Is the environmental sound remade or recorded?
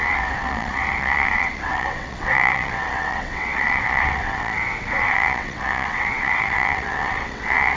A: remade